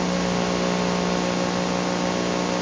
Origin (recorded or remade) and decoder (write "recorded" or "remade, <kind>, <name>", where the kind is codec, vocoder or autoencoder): recorded